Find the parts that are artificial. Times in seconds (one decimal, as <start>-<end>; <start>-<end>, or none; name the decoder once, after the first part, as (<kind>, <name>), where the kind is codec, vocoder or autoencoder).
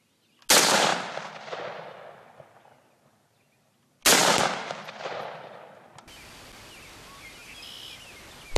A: none